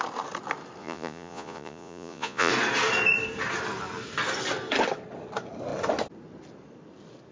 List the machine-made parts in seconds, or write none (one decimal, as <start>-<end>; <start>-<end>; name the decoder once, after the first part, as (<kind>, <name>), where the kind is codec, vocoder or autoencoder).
0.8-2.5 (vocoder, Vocos)